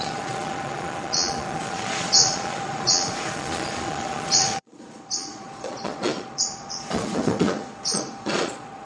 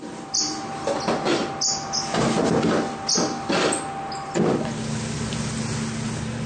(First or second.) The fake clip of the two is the first